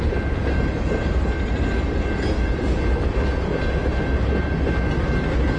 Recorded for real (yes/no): yes